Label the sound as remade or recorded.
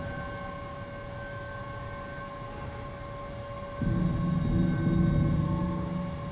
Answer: recorded